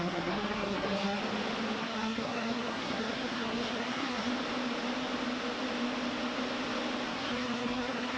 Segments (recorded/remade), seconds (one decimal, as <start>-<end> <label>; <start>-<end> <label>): 0.0-1.2 remade; 1.2-1.8 recorded; 1.8-4.3 remade; 4.3-7.1 recorded; 7.1-8.2 remade